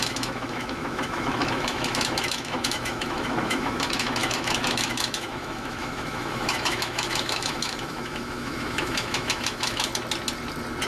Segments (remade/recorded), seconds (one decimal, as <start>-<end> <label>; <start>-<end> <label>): 0.0-9.9 remade; 9.9-10.9 recorded